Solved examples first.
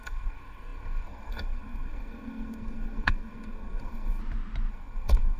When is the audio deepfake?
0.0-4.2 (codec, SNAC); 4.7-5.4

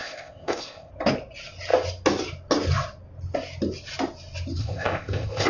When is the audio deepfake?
0.0-0.9 (codec, ZipCodec); 4.6-5.5

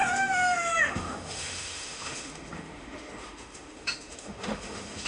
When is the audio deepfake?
0.0-5.1 (autoencoder, DAC-VAE)

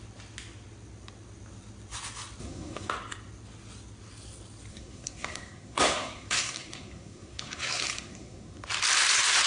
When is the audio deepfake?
2.4-2.9 (codec, SNAC); 4.7-8.6

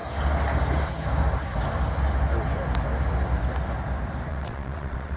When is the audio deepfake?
4.3-5.2 (vocoder, WaveNeXt)

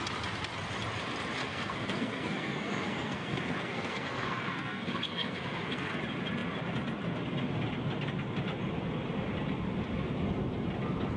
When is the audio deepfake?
1.4-6.0 (codec, SNAC)

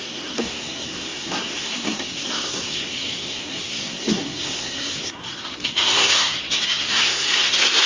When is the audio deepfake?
0.0-7.9 (codec, SNAC)

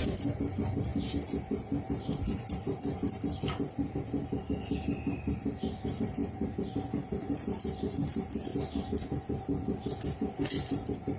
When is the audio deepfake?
0.0-6.2 (vocoder, BigVGAN v2); 6.8-8.5; 10.5-11.2